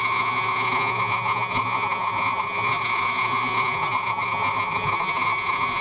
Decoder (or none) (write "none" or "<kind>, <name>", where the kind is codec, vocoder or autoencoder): vocoder, Vocos